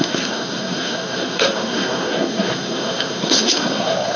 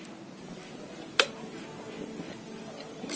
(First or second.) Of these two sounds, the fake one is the first